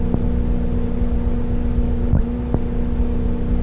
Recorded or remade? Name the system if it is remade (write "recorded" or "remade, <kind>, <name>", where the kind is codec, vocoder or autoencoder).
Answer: recorded